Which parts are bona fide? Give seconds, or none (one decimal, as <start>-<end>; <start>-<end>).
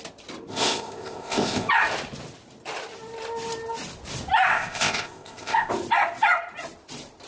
0.0-0.5; 1.7-4.5; 5.7-7.3